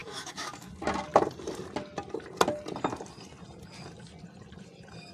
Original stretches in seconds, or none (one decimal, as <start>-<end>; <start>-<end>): 0.7-5.1